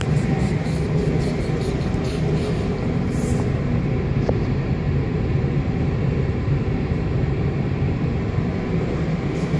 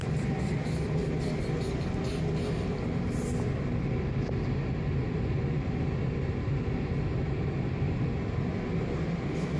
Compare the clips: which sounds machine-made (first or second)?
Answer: first